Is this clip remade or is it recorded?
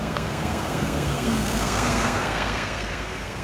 remade